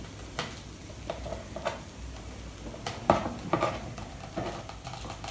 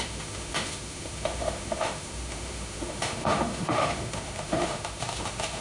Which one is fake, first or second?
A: second